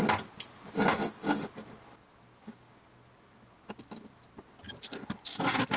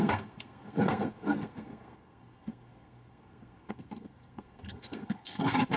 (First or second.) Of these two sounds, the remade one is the second